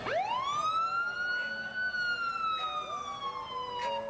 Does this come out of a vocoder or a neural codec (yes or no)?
no